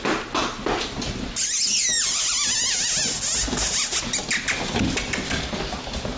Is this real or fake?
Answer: real